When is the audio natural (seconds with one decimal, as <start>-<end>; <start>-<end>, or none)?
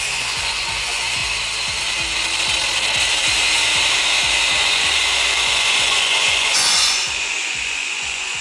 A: 1.2-4.5